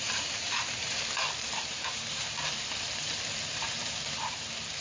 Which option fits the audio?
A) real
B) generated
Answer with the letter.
B